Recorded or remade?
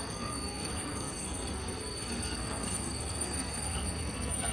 remade